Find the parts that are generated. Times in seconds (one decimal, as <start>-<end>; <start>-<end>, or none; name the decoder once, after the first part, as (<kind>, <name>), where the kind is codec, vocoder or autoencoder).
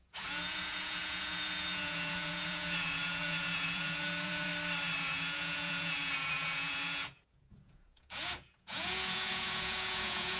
0.0-4.5 (vocoder, Vocos); 5.0-10.4